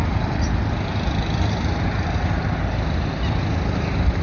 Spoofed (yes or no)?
no